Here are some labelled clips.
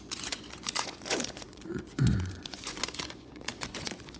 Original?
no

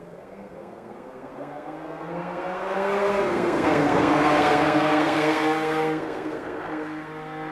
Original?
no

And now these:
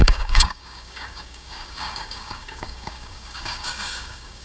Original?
no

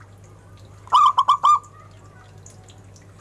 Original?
yes